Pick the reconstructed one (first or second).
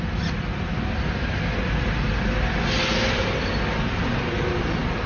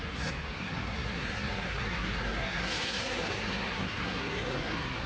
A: second